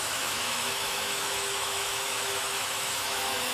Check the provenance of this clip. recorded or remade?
remade